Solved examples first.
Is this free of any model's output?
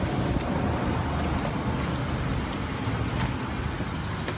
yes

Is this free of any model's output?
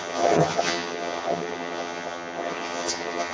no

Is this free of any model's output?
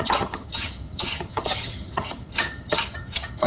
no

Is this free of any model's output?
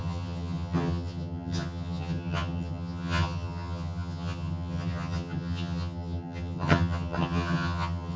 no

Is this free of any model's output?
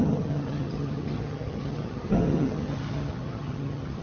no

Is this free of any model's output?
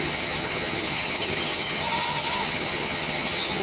no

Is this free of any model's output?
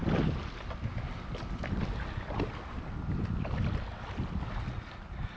yes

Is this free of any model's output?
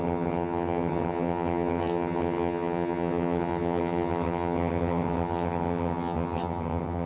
no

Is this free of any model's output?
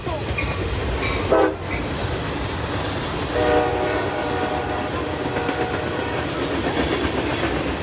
yes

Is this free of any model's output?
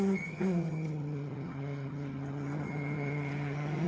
no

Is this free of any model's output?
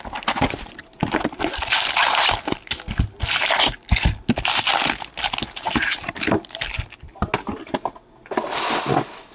yes